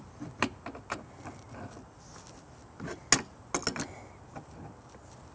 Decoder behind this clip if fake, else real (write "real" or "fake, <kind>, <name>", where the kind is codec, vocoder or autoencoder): real